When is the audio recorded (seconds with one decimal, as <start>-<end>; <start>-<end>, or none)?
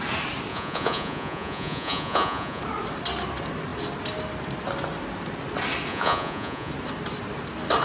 0.0-0.5; 2.6-5.9; 6.7-7.8